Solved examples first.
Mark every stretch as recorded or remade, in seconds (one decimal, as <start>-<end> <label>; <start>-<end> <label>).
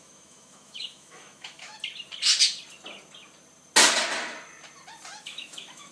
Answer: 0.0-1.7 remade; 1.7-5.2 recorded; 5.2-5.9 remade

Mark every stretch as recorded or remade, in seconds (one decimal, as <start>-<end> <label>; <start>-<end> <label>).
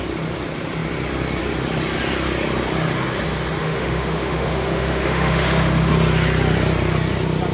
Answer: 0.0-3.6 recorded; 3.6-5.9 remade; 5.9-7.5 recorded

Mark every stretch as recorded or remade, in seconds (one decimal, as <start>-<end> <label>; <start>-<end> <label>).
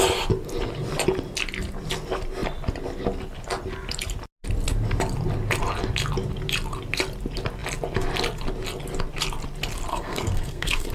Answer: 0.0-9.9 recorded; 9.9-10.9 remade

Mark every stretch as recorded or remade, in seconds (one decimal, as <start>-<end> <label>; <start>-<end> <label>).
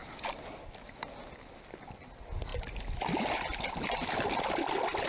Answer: 0.0-5.1 recorded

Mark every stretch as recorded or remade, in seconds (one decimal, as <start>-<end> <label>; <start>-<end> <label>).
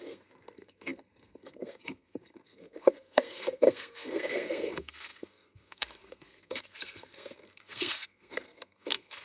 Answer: 0.0-9.2 remade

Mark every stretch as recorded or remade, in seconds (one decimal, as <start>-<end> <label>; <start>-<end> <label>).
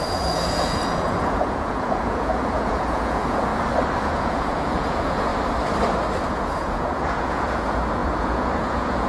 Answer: 0.0-3.5 remade; 3.5-4.0 recorded; 4.0-5.3 remade; 5.3-6.3 recorded; 6.3-9.1 remade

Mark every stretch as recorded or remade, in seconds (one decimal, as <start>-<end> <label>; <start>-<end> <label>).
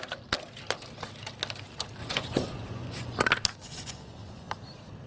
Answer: 0.0-2.0 recorded; 2.0-3.2 remade; 3.2-3.6 recorded; 3.6-4.5 remade; 4.5-5.1 recorded